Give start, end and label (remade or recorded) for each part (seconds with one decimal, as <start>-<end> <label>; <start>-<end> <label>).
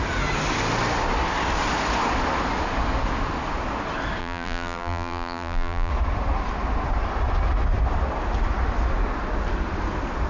0.0-4.2 recorded; 4.2-5.9 remade; 5.9-10.3 recorded